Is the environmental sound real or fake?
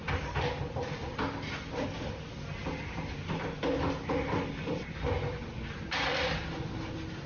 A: real